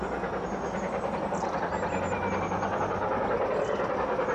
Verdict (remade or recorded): recorded